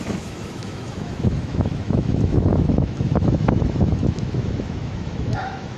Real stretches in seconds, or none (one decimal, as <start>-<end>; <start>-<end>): none